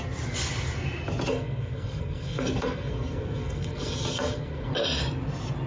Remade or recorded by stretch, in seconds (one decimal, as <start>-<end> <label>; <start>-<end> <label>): 0.0-1.3 recorded; 1.3-4.7 remade; 4.7-5.7 recorded